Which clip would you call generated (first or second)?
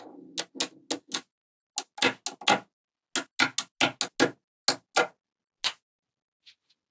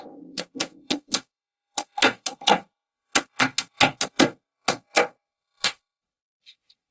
second